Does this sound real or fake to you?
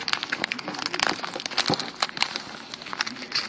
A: real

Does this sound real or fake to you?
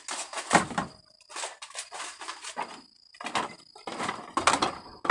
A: real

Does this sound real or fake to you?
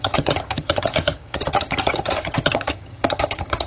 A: fake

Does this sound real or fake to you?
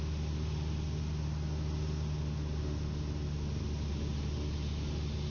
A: real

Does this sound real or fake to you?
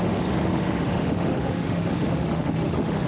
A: fake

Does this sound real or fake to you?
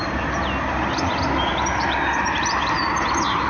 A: real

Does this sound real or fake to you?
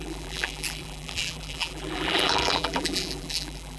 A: fake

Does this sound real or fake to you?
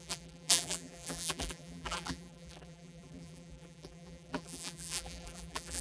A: fake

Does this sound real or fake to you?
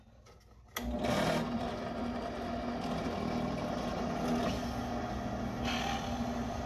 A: real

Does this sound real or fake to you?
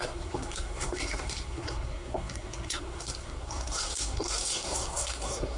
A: fake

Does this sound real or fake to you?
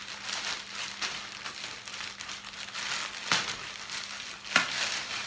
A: real